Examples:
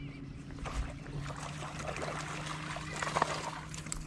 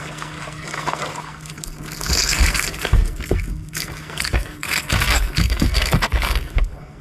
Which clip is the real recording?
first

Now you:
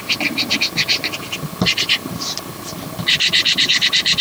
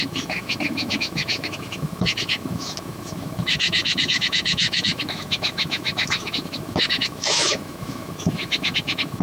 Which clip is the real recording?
first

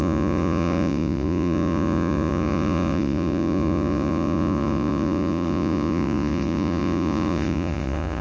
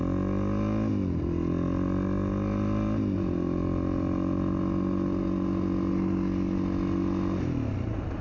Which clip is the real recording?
second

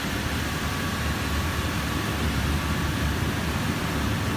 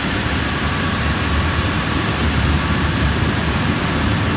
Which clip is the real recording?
first